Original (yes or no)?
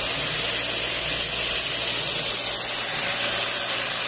yes